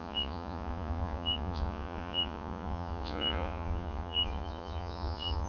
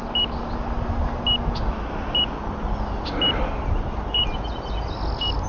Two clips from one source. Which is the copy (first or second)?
first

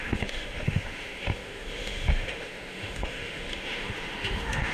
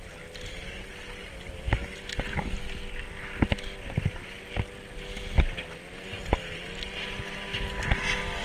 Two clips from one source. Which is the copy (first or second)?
first